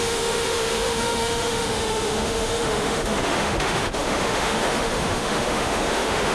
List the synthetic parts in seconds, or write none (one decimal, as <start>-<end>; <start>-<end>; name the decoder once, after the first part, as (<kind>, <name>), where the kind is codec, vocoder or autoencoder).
0.0-6.3 (autoencoder, DAC-VAE)